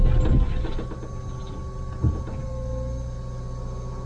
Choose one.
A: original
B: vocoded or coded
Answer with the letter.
A